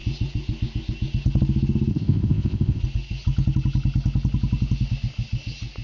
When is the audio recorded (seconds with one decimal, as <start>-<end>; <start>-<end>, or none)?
0.0-1.9; 2.8-5.8